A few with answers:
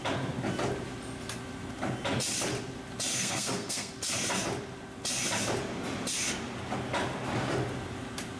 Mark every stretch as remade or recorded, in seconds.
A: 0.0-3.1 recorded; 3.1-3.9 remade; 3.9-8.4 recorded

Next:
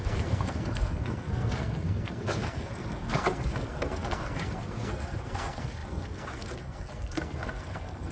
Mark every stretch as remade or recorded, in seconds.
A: 0.0-8.1 remade

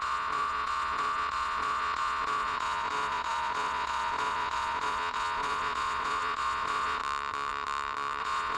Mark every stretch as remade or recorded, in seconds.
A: 0.0-7.0 remade; 7.0-8.2 recorded; 8.2-8.6 remade

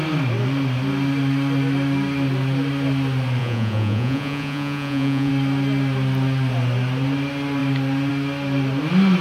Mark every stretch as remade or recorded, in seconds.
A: 0.0-3.4 recorded; 3.4-5.3 remade; 5.3-9.2 recorded

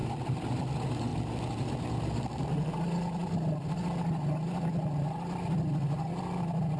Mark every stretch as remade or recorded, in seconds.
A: 0.0-0.6 remade; 0.6-6.8 recorded

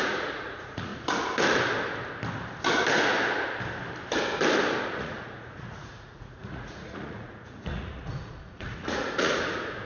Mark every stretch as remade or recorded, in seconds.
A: 0.0-0.9 remade; 0.9-4.8 recorded; 4.8-9.8 remade

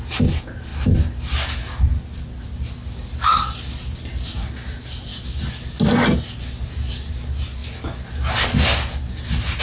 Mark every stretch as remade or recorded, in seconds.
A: 0.0-9.6 recorded

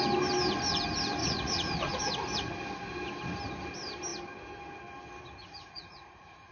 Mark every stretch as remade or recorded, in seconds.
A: 0.0-1.2 recorded; 1.2-2.1 remade; 2.1-5.4 recorded; 5.4-6.5 remade